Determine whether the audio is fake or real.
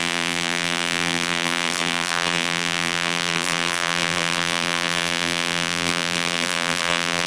fake